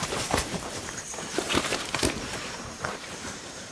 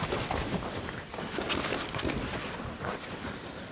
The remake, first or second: first